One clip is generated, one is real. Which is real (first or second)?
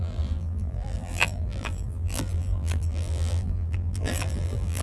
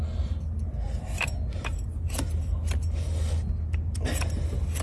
second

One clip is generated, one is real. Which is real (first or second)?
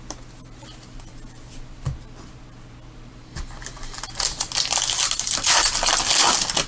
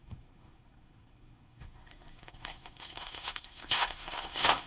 first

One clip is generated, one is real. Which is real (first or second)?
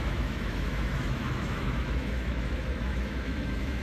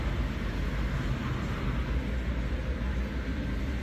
second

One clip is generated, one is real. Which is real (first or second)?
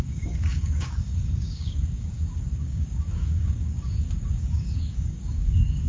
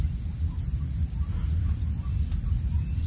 second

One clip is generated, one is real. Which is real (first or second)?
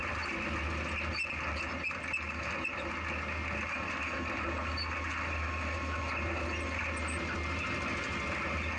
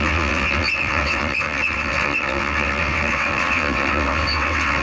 first